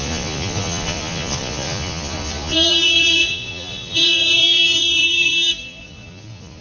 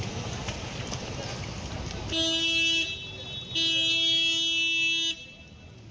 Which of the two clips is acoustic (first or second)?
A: second